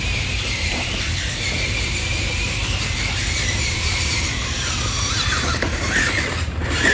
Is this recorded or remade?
remade